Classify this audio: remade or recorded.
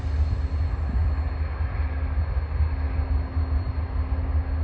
recorded